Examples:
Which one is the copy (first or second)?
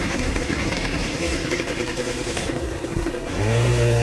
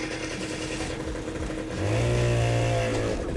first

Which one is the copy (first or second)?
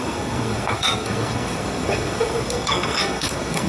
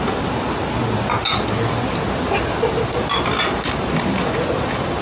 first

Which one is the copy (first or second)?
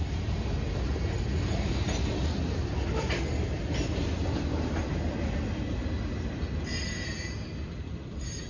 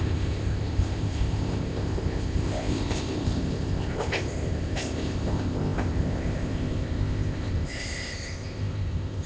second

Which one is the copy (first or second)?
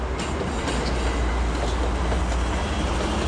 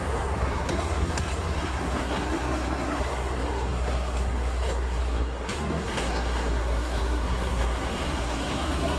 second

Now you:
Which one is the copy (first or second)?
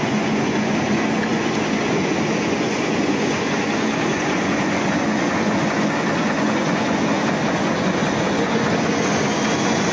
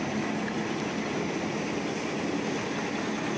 first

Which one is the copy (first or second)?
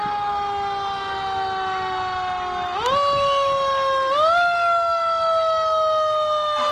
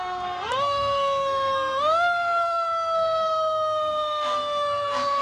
second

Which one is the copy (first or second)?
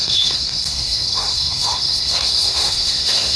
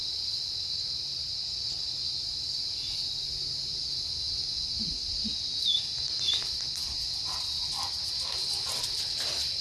first